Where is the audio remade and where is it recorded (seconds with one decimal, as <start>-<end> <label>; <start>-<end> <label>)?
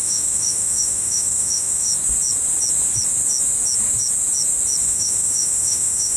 0.0-1.9 remade; 1.9-4.8 recorded; 4.8-6.2 remade